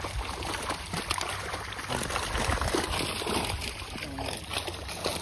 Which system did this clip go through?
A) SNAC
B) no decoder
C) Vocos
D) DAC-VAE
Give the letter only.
B